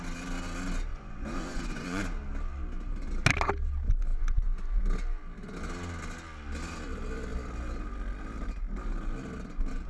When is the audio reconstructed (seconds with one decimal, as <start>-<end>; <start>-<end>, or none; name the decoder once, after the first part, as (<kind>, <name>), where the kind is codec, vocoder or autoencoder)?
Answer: 0.9-2.0 (vocoder, Vocos)

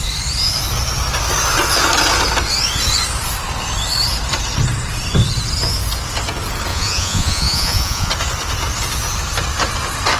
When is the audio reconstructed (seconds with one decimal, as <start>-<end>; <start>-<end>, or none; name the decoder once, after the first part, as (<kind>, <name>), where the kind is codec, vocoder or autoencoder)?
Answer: 6.7-8.1 (vocoder, Vocos)

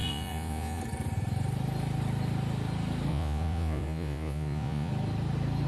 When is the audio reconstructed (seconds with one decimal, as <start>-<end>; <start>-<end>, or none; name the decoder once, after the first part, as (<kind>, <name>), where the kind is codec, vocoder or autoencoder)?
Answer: 0.0-0.8 (vocoder, Vocos); 3.1-4.9

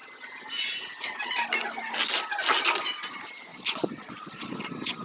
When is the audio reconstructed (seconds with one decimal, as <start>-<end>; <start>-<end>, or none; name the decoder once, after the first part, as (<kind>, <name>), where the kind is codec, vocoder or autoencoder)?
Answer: 3.5-4.6 (vocoder, Vocos)

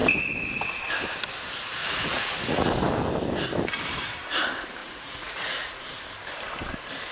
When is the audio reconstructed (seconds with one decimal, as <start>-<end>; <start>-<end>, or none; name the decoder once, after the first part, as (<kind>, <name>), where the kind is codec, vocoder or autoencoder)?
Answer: 1.8-2.7 (vocoder, Vocos); 4.8-5.8

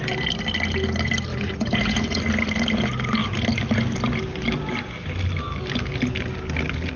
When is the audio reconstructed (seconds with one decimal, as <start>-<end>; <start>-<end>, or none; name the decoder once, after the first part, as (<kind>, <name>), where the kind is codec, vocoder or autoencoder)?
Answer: 1.3-2.2 (vocoder, Vocos)

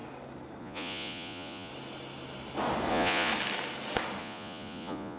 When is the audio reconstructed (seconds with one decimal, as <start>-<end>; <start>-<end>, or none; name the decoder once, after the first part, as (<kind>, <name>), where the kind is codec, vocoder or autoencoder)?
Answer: 0.6-1.7 (vocoder, Vocos); 2.9-3.3; 4.2-5.2

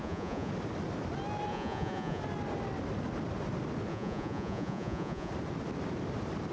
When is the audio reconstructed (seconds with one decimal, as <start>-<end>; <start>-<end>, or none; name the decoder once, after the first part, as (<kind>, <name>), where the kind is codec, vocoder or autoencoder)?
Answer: 0.0-0.5 (vocoder, Vocos); 1.5-2.2; 3.9-5.3